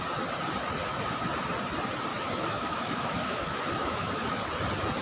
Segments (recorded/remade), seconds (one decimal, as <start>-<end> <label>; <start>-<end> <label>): 0.0-2.1 recorded; 2.1-4.4 remade; 4.4-5.0 recorded